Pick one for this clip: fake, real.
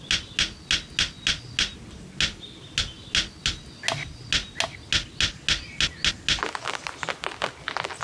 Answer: real